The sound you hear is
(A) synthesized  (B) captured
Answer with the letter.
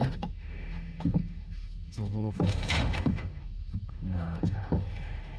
A